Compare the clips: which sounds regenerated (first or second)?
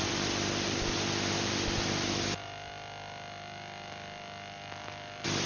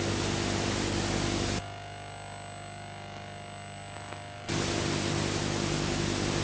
first